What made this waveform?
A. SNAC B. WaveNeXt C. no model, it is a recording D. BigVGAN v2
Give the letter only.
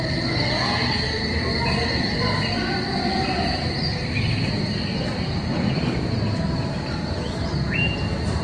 C